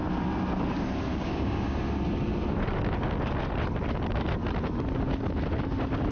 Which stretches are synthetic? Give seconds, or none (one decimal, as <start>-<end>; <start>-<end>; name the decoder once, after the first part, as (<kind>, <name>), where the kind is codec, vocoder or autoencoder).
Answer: 1.1-1.8 (codec, DAC)